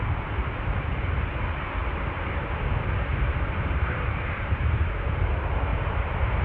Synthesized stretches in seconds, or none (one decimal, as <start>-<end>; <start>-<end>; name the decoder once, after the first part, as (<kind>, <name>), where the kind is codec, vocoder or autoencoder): 1.8-2.5 (vocoder, BigVGAN v2); 3.1-4.8; 5.7-6.4